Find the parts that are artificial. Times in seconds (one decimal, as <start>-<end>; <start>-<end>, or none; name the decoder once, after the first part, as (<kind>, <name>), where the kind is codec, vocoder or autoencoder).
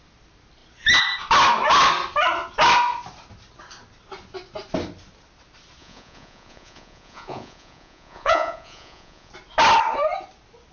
5.8-9.3 (vocoder, Vocos)